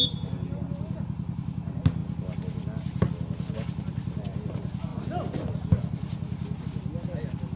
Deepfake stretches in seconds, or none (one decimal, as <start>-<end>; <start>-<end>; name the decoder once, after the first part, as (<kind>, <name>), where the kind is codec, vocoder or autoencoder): none